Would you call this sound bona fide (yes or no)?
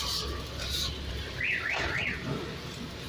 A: no